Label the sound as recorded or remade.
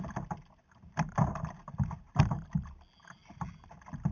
recorded